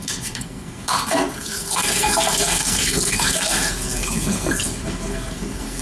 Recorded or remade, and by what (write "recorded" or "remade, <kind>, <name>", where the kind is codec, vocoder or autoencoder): remade, codec, SNAC